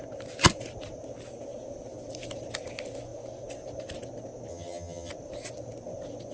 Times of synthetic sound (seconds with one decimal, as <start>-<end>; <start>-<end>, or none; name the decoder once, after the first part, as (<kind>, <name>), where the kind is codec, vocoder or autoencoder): 4.5-5.1 (vocoder, HiFi-GAN)